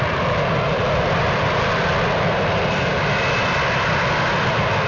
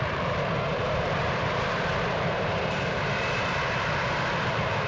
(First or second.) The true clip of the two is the first